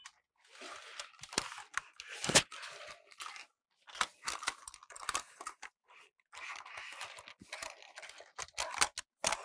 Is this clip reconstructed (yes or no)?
no